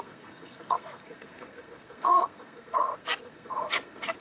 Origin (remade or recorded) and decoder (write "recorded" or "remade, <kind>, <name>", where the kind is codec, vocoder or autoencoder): remade, codec, SNAC